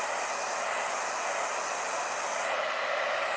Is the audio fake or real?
real